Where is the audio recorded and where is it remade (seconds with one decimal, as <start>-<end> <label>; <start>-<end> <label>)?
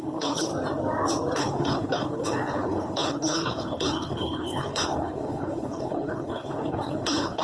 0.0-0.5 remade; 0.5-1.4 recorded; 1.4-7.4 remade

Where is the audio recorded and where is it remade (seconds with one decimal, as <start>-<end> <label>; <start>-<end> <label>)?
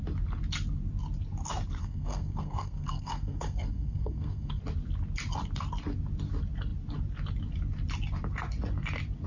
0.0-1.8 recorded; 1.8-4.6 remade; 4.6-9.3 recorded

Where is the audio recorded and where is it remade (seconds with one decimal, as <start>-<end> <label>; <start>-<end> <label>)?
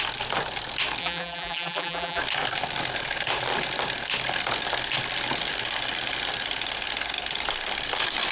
0.0-1.0 recorded; 1.0-2.2 remade; 2.2-8.3 recorded